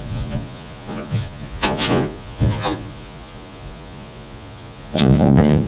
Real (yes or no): no